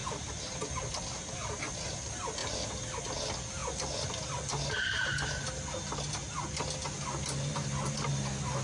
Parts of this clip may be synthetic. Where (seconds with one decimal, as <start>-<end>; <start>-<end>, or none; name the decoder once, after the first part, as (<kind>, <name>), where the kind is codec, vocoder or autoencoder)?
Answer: none